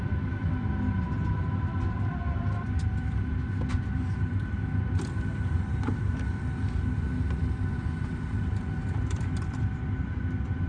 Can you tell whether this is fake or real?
fake